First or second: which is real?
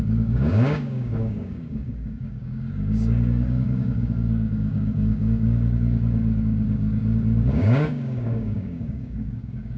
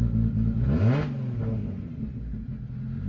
second